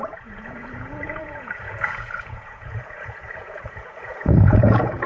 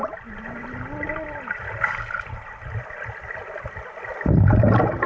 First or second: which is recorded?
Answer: second